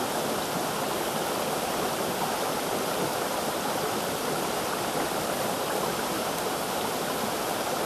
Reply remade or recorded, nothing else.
recorded